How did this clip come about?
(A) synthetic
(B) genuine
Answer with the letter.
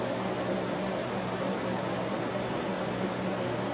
B